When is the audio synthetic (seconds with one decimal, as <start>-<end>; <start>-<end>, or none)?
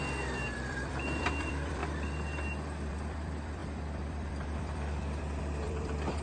0.0-1.8; 2.9-6.2